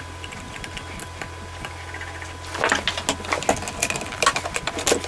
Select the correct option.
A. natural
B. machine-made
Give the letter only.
A